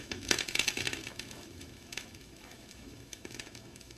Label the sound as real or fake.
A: fake